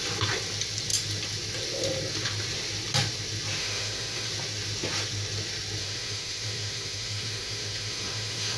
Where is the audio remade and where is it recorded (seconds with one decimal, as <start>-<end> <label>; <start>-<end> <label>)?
0.0-3.6 recorded; 3.6-4.3 remade; 4.3-5.8 recorded; 5.8-8.6 remade